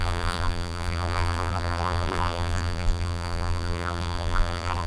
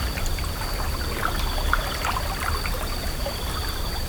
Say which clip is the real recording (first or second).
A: second